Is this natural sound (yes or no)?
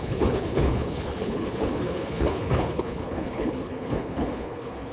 no